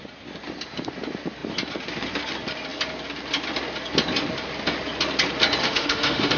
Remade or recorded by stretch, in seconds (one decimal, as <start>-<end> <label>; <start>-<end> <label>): 0.0-5.6 recorded; 5.6-6.4 remade